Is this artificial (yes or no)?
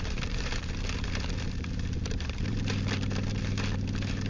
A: yes